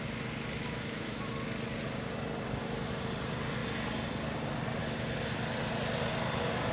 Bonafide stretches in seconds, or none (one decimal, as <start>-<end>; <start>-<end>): 0.0-0.6; 1.3-6.7